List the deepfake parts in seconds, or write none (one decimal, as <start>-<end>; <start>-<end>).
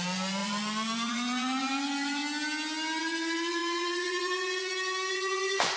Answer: 0.0-2.2; 3.0-5.8